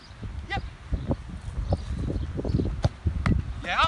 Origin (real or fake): real